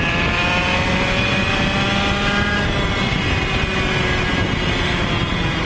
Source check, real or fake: real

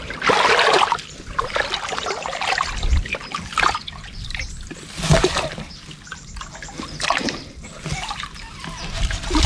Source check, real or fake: fake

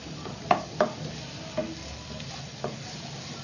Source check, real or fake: real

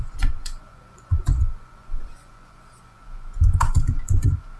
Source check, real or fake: fake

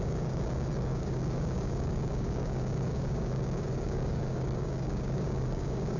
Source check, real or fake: fake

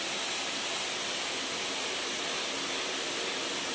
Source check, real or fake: real